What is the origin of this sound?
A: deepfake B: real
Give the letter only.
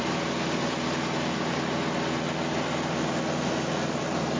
B